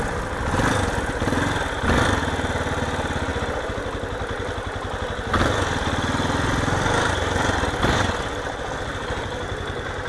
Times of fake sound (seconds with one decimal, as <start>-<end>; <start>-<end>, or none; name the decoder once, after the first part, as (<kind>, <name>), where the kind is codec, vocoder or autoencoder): none

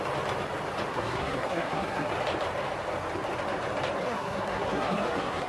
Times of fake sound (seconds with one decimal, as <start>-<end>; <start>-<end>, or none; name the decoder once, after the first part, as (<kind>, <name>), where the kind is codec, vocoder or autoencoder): 0.9-2.1 (codec, SNAC); 4.0-5.5

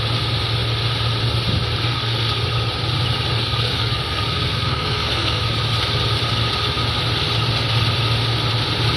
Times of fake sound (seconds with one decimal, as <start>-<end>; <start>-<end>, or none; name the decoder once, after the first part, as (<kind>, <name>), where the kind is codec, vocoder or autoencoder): 1.9-2.4 (codec, SNAC); 3.4-5.5

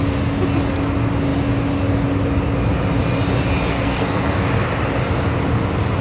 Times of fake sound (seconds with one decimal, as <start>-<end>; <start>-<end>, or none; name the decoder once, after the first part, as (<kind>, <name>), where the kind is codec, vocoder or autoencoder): 3.7-4.4 (codec, SNAC)

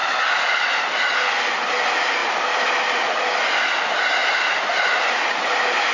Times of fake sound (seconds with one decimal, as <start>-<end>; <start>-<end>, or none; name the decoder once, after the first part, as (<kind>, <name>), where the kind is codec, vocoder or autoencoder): none